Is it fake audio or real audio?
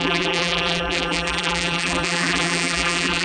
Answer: fake